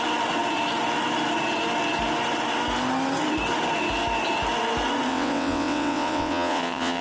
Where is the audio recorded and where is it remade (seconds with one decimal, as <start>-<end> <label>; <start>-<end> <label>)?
0.0-5.1 recorded; 5.1-7.0 remade